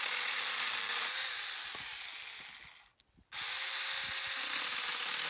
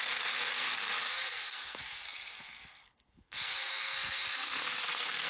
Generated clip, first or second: second